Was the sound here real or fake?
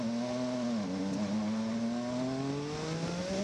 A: real